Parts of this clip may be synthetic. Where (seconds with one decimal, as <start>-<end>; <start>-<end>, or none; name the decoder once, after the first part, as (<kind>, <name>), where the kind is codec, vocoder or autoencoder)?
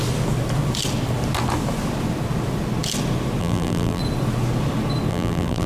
3.4-4.0 (vocoder, BigVGAN v2); 5.1-5.7